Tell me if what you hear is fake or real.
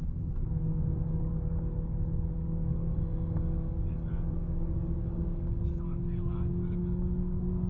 fake